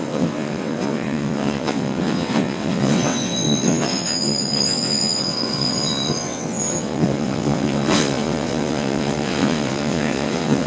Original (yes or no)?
no